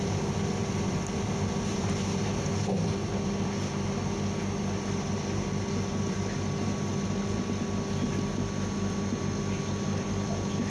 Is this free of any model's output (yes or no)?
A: yes